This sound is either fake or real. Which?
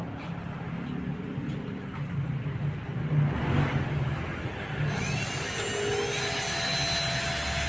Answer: real